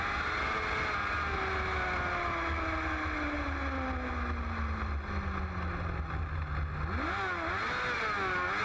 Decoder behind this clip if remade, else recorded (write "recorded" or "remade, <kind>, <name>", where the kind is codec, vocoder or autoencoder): recorded